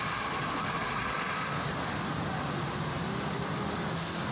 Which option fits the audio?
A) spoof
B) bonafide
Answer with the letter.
B